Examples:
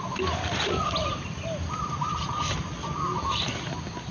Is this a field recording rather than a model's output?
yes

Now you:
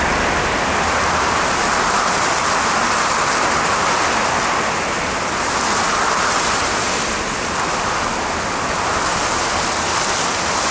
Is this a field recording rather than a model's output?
yes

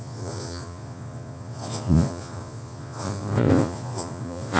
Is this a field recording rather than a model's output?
no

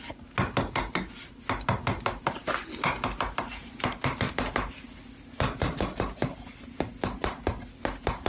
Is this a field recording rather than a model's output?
yes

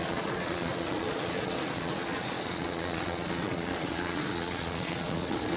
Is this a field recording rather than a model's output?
no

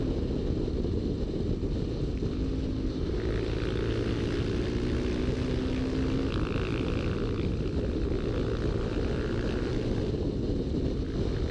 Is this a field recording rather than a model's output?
yes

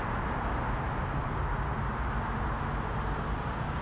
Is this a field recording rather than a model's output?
yes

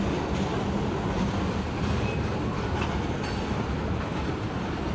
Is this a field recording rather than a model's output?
yes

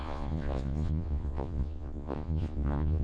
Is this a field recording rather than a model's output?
no